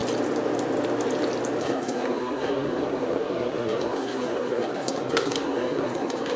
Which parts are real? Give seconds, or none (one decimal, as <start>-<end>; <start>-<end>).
0.0-1.6